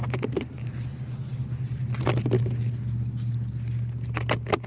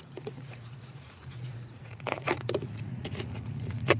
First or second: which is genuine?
first